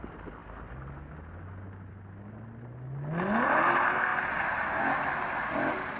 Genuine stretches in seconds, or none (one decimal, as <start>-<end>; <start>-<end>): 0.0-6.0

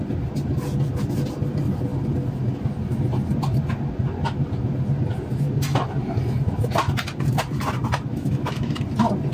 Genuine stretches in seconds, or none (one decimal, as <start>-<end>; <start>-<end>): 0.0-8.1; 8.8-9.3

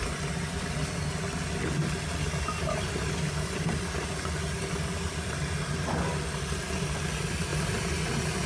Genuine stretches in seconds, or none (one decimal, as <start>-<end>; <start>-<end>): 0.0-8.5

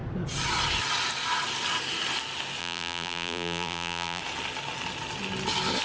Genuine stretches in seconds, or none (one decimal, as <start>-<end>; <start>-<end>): 0.0-2.6; 4.2-5.8

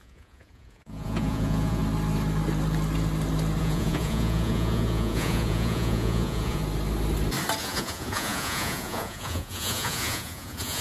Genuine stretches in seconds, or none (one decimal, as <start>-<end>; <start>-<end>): 1.8-3.6; 6.6-7.6

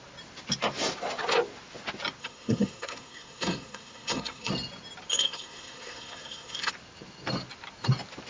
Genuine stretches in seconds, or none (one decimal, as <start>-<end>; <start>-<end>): 0.0-2.2; 4.5-5.1; 6.7-8.3

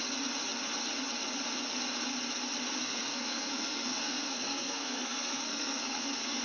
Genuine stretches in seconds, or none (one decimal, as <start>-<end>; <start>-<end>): 0.0-2.8

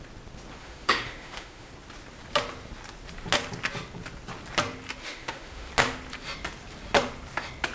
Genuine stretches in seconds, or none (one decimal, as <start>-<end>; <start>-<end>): 0.0-0.6; 1.7-5.0; 5.7-7.7